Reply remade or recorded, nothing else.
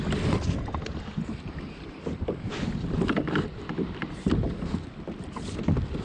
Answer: recorded